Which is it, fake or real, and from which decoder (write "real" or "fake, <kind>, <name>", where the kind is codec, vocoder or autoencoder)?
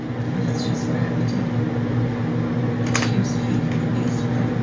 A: real